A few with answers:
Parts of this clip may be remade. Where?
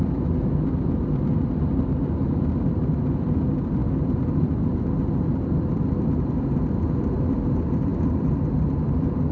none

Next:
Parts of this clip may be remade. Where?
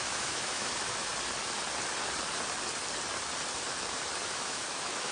0.0-1.1 (autoencoder, DAC-VAE); 4.2-5.1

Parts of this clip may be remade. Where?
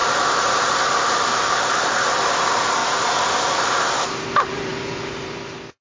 0.0-2.8 (vocoder, BigVGAN v2); 3.3-5.8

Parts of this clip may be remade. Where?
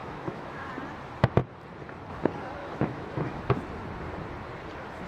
0.0-0.7 (autoencoder, DAC-VAE); 2.6-3.6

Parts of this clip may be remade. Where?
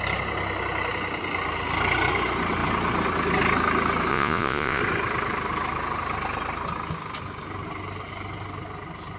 4.1-4.8 (vocoder, Vocos)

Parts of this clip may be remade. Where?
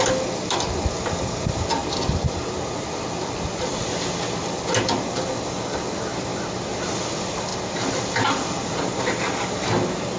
none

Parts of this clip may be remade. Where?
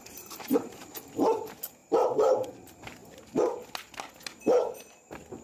0.0-0.9 (vocoder, BigVGAN v2); 1.8-2.5